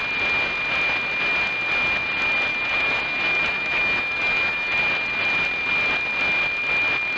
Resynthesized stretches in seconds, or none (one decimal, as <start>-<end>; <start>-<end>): 2.5-4.8